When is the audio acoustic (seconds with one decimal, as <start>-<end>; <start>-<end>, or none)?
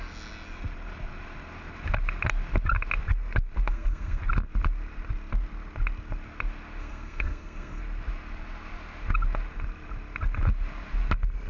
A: 0.0-3.7; 4.2-6.8; 7.8-11.5